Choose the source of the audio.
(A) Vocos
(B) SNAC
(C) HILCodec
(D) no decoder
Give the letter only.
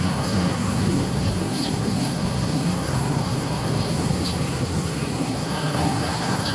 B